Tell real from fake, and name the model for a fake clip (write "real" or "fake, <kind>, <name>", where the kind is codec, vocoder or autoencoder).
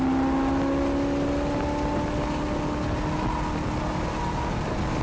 real